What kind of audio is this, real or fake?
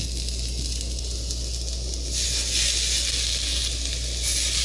real